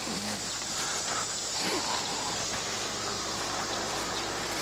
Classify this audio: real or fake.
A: real